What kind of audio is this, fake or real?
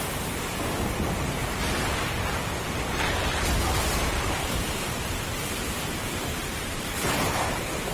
fake